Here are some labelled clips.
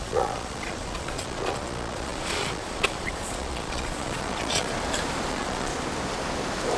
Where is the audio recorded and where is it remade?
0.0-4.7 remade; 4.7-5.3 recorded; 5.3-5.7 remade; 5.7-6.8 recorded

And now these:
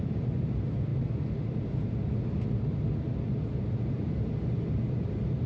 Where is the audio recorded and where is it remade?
0.0-5.5 recorded

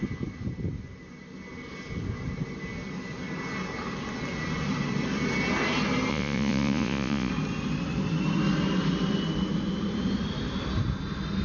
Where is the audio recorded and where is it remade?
0.0-6.1 recorded; 6.1-7.3 remade; 7.3-11.4 recorded

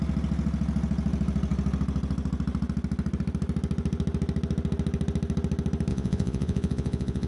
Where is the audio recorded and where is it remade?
0.0-5.9 recorded; 5.9-7.3 remade

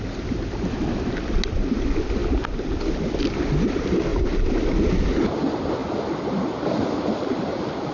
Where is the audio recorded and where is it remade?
0.0-7.9 recorded

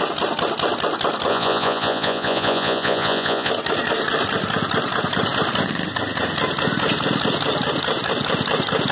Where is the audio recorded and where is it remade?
0.0-1.3 recorded; 1.3-3.5 remade; 3.5-8.9 recorded

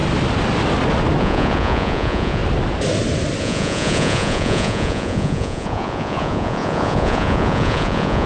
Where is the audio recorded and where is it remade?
0.0-1.2 recorded; 1.2-2.4 remade; 2.4-3.4 recorded; 3.4-8.3 remade